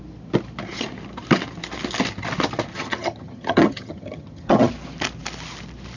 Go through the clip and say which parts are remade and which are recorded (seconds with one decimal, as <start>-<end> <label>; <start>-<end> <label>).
0.0-2.7 recorded; 2.7-4.7 remade; 4.7-6.0 recorded